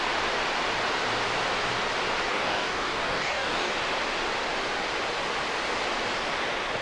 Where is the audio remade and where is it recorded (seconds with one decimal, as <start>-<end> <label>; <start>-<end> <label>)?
0.0-2.3 recorded; 2.3-3.7 remade; 3.7-6.8 recorded